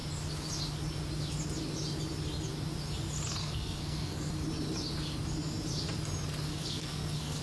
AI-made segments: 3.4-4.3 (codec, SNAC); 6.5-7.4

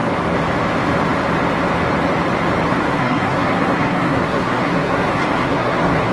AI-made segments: 2.7-6.1 (codec, SNAC)

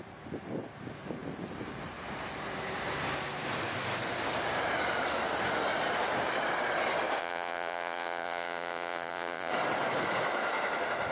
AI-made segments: 7.2-9.5 (vocoder, Vocos)